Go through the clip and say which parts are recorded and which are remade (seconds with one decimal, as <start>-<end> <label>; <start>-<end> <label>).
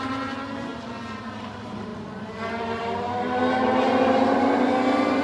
0.0-5.2 recorded